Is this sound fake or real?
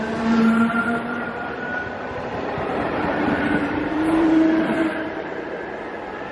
fake